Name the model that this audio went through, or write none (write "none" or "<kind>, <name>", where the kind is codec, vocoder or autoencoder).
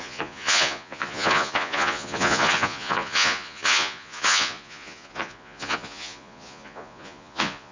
vocoder, Vocos